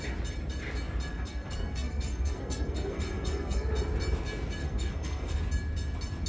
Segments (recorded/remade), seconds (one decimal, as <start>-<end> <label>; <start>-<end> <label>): 0.0-1.1 recorded; 1.1-3.7 remade; 3.7-4.6 recorded; 4.6-5.4 remade; 5.4-6.3 recorded

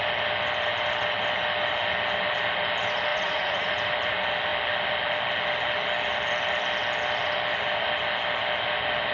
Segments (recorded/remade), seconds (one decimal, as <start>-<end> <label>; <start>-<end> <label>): 0.0-3.1 recorded; 3.1-3.7 remade; 3.7-9.1 recorded

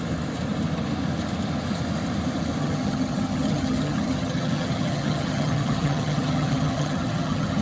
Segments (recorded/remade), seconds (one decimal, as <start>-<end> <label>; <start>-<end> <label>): 0.0-2.6 recorded; 2.6-7.6 remade

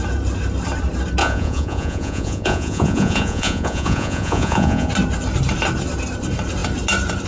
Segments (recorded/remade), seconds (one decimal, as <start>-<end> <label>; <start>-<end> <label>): 0.0-1.2 recorded; 1.2-4.9 remade; 4.9-7.3 recorded

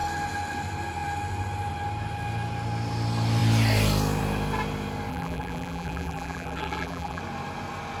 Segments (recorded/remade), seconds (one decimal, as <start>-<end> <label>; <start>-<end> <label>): 0.0-5.1 recorded; 5.1-7.2 remade; 7.2-8.0 recorded

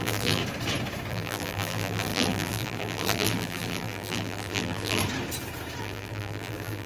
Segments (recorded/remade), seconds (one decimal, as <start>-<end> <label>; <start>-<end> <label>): 0.0-0.4 remade; 0.4-1.1 recorded; 1.1-5.0 remade; 5.0-5.8 recorded; 5.8-6.9 remade